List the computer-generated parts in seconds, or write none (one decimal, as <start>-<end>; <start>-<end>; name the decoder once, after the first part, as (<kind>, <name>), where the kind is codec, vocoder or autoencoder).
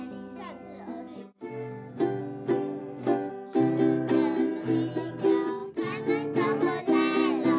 1.2-2.2 (codec, SNAC); 2.8-3.3